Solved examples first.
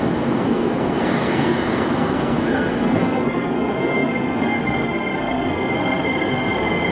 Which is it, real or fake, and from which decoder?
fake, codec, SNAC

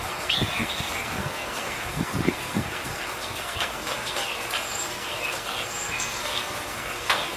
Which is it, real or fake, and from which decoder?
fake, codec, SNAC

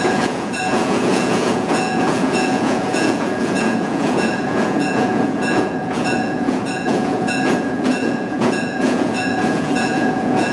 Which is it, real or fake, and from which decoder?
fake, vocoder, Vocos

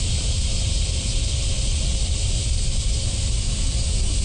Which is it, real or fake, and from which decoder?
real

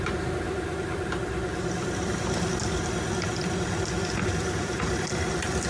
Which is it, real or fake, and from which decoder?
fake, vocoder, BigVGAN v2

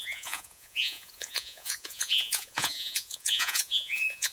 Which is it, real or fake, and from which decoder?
fake, vocoder, Vocos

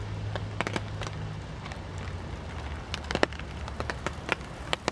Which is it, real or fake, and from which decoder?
real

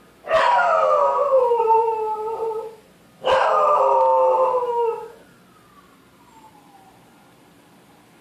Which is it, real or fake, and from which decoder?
real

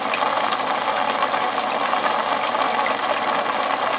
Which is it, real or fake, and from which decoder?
real